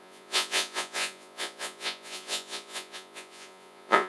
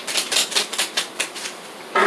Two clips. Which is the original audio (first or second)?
second